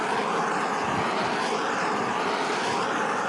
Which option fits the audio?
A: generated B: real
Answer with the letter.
A